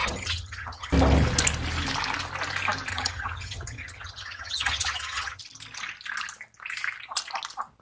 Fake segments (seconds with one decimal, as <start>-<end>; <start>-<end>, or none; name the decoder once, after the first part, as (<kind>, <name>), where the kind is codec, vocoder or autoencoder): 0.0-0.9 (vocoder, HiFi-GAN); 2.9-5.4